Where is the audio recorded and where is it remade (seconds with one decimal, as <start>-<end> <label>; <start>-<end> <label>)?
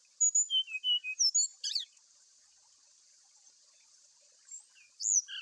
0.0-1.5 recorded; 1.5-4.6 remade; 4.6-5.4 recorded